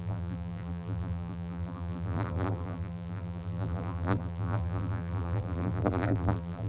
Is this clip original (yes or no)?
no